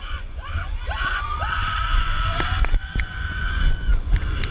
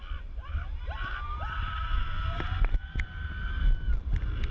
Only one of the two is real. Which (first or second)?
second